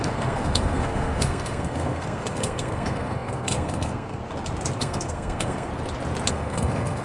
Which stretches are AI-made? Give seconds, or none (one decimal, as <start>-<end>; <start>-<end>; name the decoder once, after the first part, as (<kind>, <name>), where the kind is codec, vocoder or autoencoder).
0.0-4.2 (codec, SNAC); 4.8-5.7; 6.3-7.0